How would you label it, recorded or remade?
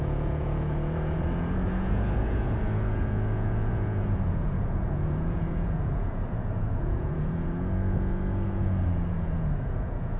remade